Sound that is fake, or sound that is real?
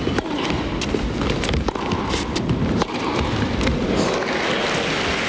real